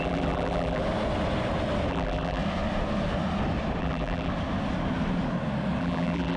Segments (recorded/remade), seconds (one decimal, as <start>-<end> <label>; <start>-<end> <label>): 0.0-0.8 remade; 0.8-1.9 recorded; 1.9-2.4 remade; 2.4-3.8 recorded; 3.8-4.3 remade; 4.3-5.8 recorded; 5.8-6.4 remade